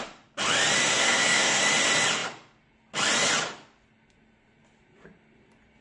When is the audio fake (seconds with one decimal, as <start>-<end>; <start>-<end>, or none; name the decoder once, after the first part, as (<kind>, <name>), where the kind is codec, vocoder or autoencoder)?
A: 0.9-1.6 (codec, SNAC)

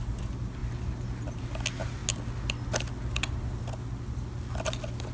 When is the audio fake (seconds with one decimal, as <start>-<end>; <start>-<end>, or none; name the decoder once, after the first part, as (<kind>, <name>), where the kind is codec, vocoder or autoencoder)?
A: none

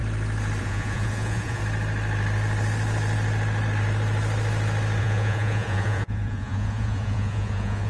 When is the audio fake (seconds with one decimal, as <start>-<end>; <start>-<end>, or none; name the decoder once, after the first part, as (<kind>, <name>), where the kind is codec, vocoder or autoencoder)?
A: 0.6-1.6 (vocoder, Vocos); 5.0-7.9

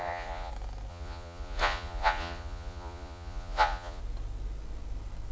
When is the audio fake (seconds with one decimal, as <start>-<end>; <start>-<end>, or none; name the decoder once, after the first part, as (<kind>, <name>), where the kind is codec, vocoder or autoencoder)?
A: 0.0-0.5 (vocoder, Vocos); 0.9-4.0

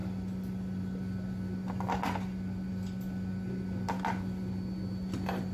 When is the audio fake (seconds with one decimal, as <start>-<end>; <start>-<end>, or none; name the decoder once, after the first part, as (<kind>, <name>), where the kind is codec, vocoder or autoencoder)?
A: none

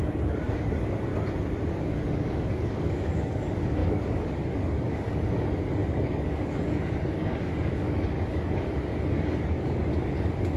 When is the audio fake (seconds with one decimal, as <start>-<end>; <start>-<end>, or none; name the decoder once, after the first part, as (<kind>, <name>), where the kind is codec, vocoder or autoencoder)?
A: 0.0-1.1 (codec, DAC); 1.7-10.6

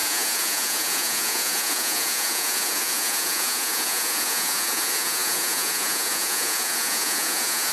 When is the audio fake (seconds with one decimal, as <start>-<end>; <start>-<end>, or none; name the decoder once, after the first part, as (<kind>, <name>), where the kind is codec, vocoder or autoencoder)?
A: 0.0-7.7 (vocoder, Vocos)